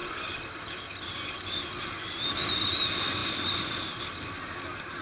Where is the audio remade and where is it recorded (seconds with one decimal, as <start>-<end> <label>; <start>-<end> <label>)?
0.0-5.0 recorded